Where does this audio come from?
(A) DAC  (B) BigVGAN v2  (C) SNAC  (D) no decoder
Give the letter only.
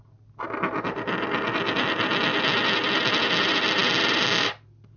D